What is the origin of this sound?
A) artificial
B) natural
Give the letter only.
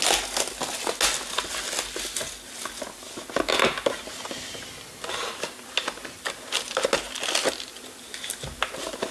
B